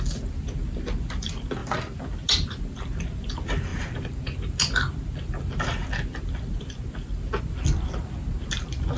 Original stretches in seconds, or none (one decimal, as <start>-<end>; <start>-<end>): 0.0-9.0